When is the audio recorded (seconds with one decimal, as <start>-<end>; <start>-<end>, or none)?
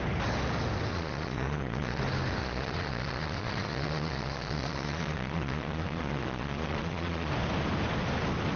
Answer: 0.0-0.9; 2.0-2.4; 7.3-8.6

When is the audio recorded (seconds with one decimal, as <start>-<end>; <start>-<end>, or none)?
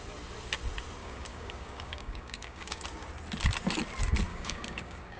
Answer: 0.0-1.0; 2.8-4.3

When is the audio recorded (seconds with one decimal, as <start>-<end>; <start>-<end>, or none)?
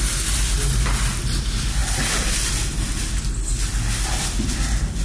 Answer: 0.0-5.0